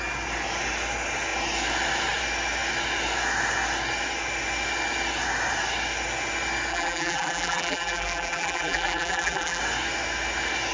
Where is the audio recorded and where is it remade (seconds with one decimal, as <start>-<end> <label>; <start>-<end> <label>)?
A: 0.0-6.7 recorded; 6.7-9.6 remade; 9.6-10.7 recorded